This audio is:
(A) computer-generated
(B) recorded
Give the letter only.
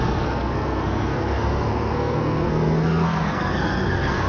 A